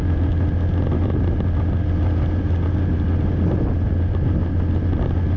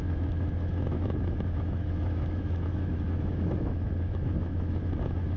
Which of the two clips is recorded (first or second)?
first